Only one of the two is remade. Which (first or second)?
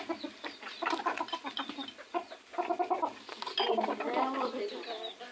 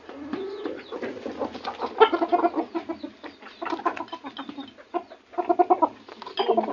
first